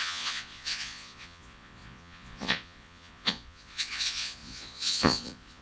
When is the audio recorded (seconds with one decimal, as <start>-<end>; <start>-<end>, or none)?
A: none

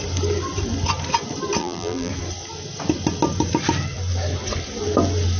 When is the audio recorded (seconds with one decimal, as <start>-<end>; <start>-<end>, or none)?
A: 0.0-1.6; 2.1-5.4

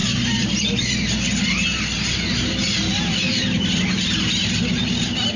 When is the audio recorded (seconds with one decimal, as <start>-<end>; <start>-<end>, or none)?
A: 0.0-5.4

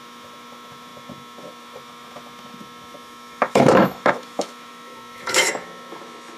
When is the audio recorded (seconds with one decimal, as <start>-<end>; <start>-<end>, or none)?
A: none

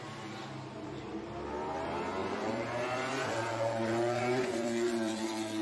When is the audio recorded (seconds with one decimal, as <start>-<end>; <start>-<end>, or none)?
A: 0.0-2.2

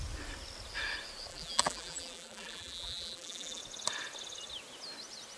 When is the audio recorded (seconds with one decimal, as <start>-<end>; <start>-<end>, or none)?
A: 0.0-1.3; 3.6-5.4